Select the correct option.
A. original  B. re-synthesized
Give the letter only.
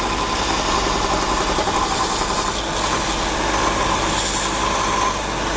A